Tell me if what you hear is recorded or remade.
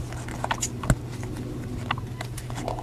recorded